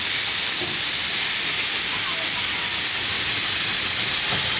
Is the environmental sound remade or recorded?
recorded